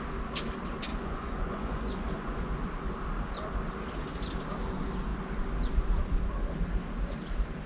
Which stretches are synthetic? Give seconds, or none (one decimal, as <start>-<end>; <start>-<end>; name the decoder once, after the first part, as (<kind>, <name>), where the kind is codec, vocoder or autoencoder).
0.9-2.6 (vocoder, Vocos)